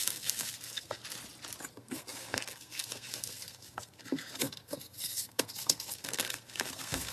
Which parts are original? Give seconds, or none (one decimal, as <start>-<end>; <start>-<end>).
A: 1.0-1.7